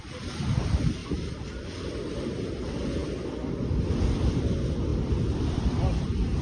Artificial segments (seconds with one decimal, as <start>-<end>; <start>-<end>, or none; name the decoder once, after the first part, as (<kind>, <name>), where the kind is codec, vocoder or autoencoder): 0.0-1.0 (vocoder, BigVGAN v2); 1.6-6.4